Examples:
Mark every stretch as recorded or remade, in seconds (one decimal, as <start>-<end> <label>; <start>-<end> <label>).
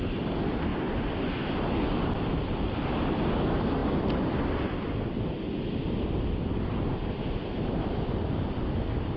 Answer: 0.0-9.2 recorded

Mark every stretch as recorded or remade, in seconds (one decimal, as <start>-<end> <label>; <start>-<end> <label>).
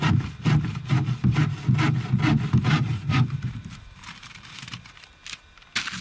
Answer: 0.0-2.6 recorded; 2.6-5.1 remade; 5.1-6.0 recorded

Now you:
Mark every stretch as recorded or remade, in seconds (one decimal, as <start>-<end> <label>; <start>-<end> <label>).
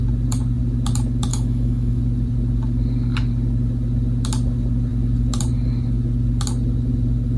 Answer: 0.0-1.3 recorded; 1.3-2.0 remade; 2.0-7.4 recorded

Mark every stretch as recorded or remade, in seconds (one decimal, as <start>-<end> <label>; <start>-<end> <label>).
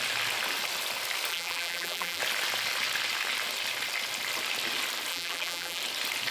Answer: 0.0-1.3 recorded; 1.3-2.2 remade; 2.2-5.1 recorded; 5.1-5.8 remade; 5.8-6.3 recorded